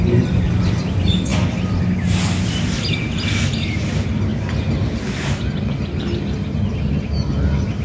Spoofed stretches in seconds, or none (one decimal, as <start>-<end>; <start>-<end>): none